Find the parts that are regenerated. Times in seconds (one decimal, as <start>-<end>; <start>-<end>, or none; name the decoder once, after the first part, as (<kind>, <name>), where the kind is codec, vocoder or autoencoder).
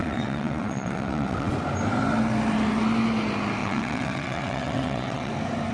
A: 0.0-1.5 (vocoder, WaveNeXt); 3.6-5.3